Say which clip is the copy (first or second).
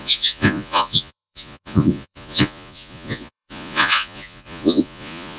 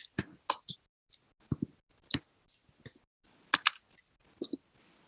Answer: first